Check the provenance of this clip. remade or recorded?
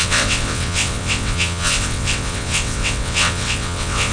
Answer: remade